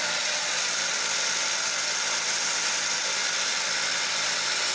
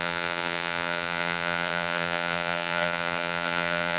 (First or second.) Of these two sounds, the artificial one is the second